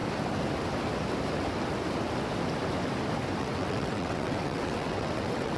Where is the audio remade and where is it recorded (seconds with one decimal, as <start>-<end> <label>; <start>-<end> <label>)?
0.0-3.4 recorded; 3.4-5.6 remade